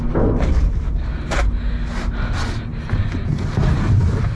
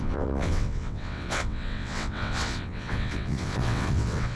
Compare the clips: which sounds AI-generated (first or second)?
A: second